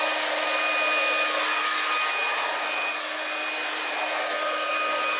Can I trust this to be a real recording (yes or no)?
yes